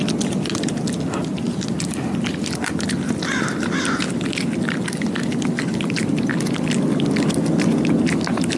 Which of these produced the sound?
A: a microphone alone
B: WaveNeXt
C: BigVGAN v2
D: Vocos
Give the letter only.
A